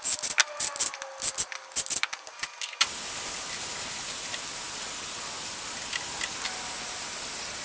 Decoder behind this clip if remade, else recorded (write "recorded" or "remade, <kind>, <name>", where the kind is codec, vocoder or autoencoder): recorded